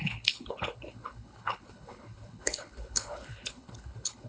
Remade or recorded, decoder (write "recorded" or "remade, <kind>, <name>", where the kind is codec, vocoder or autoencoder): remade, codec, HILCodec